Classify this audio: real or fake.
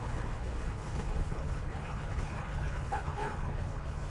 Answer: fake